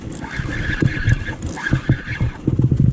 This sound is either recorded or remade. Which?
recorded